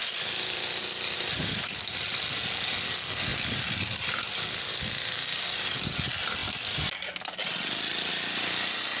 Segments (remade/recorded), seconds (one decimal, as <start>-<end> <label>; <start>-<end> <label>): 0.0-9.0 recorded